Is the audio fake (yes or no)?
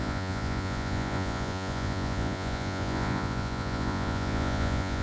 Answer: yes